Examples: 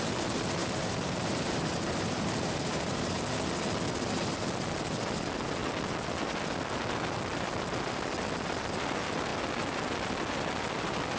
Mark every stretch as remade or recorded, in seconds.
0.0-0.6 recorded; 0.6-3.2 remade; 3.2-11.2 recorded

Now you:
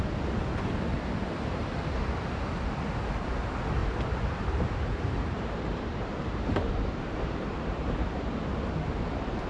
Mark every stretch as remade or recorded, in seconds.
0.0-3.8 recorded; 3.8-8.6 remade; 8.6-9.5 recorded

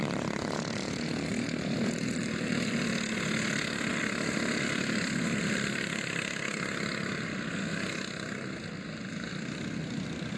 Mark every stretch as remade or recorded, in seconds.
0.0-1.3 recorded; 1.3-2.2 remade; 2.2-3.9 recorded; 3.9-6.0 remade; 6.0-10.4 recorded

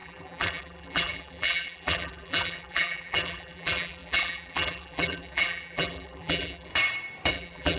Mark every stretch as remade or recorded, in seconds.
0.0-6.7 remade; 6.7-7.3 recorded; 7.3-7.8 remade